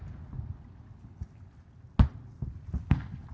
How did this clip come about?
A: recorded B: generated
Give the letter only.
A